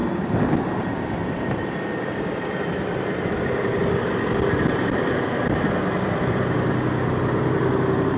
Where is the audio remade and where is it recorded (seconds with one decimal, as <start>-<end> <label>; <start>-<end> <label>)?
0.0-8.2 recorded